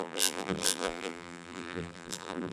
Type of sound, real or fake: fake